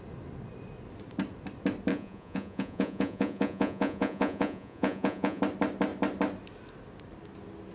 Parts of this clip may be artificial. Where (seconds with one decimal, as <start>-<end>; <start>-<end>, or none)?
1.9-5.4